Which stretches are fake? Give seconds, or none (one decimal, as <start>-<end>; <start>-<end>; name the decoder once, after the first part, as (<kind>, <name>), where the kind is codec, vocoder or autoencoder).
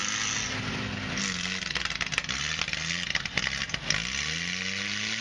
none